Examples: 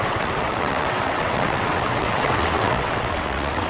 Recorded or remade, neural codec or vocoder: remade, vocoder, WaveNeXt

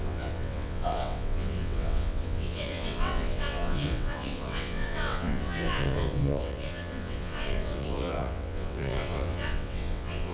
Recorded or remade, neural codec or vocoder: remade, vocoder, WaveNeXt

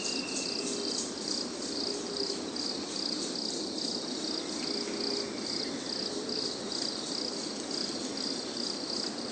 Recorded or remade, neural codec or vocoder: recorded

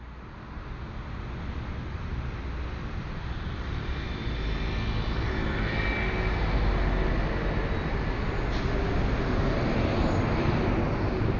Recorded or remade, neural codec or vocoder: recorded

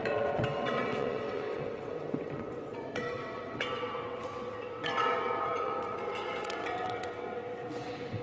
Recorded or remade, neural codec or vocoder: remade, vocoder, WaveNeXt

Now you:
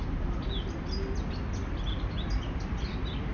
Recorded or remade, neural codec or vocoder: recorded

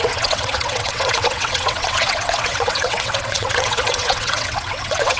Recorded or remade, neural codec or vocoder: remade, vocoder, WaveNeXt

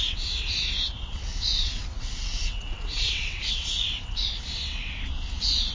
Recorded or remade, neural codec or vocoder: remade, vocoder, WaveNeXt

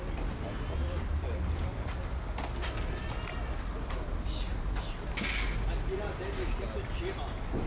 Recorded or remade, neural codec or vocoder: recorded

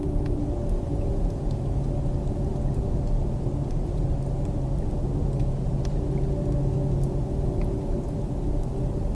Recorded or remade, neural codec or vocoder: recorded